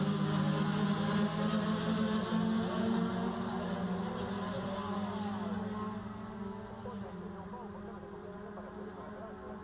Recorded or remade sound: recorded